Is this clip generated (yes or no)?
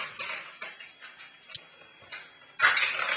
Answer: no